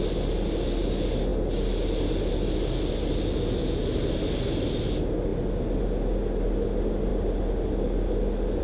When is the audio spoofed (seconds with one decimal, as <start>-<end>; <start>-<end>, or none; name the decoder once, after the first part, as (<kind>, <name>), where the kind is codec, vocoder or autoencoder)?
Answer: none